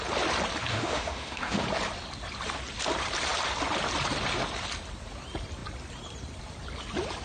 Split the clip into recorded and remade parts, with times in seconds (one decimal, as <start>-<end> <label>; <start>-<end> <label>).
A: 0.0-0.7 recorded; 0.7-1.6 remade; 1.6-7.2 recorded